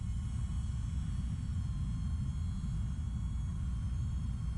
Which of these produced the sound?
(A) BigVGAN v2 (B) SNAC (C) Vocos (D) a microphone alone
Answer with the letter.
D